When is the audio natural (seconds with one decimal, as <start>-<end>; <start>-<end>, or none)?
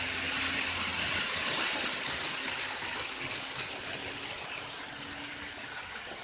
0.0-0.9; 4.6-6.2